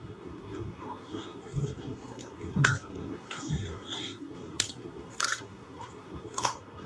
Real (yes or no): no